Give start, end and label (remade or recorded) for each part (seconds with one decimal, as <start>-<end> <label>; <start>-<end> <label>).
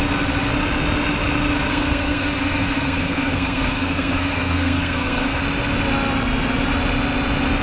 0.0-1.7 recorded; 1.7-5.4 remade; 5.4-7.6 recorded